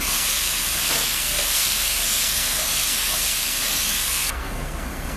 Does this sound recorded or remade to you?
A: remade